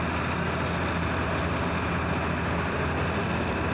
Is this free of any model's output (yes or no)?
yes